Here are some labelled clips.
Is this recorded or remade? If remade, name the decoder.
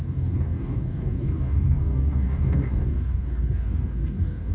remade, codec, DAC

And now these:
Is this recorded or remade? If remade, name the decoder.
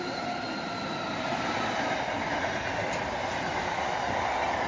recorded